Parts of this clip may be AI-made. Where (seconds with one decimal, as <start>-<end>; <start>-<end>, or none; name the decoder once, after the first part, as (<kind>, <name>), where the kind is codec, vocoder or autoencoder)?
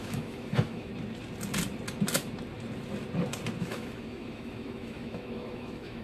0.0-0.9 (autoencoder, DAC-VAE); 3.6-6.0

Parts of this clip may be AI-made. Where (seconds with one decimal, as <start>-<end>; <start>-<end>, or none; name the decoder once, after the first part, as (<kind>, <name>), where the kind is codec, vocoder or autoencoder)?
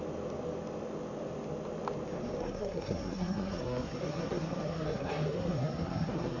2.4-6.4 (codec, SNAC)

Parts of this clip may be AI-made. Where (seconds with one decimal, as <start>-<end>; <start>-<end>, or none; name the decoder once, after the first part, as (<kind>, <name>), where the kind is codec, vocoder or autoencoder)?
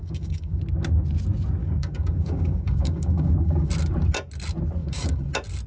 0.0-0.6 (codec, DAC); 1.6-3.7; 4.8-5.3